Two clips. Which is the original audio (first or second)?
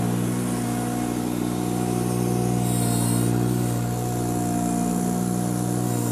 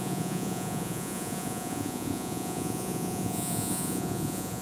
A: first